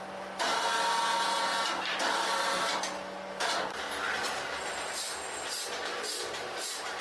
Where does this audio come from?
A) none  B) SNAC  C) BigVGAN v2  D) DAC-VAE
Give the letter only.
A